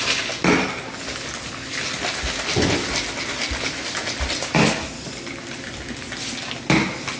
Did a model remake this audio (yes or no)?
no